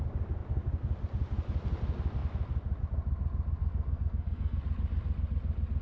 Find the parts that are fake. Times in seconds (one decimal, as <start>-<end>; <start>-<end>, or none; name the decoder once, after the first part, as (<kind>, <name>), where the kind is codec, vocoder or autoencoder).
3.6-4.6 (codec, SNAC)